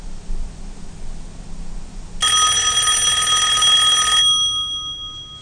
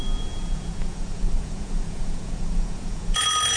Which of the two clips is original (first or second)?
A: first